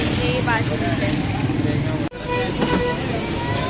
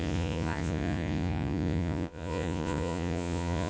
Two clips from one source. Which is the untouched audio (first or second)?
first